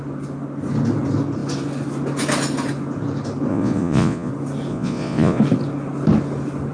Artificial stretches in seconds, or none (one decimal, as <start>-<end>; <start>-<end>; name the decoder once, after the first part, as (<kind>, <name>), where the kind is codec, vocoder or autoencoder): 3.5-4.3 (vocoder, Vocos); 4.7-5.4